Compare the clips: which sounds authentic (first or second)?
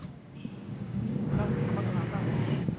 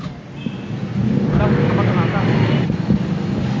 second